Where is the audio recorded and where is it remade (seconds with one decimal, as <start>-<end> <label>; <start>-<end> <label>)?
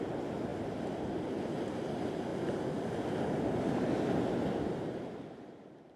0.0-6.0 recorded